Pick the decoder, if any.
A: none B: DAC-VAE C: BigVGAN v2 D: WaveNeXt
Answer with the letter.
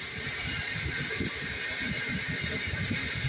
C